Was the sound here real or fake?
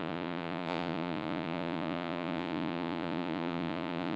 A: fake